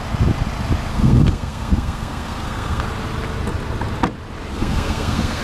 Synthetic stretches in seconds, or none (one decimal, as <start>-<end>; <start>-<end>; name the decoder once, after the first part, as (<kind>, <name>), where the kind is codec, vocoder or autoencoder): 0.9-2.8 (codec, SNAC); 4.5-5.4